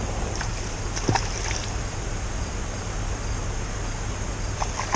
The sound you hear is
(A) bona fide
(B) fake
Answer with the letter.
A